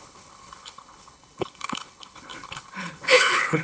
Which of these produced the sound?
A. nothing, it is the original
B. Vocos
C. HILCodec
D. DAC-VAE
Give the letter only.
C